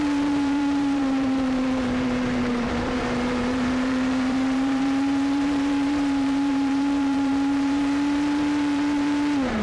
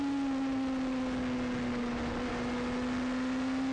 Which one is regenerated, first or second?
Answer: first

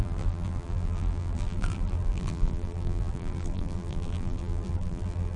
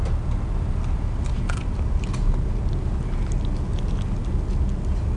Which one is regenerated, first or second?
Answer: first